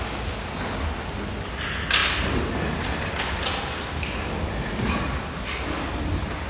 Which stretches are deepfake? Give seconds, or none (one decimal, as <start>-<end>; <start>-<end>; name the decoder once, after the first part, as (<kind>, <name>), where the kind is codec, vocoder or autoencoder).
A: none